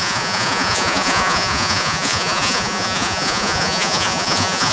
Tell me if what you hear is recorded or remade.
remade